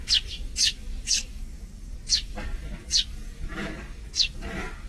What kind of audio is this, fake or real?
fake